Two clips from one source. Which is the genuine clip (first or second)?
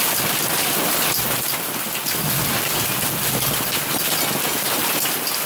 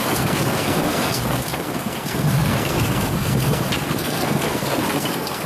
first